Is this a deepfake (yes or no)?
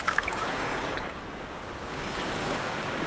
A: yes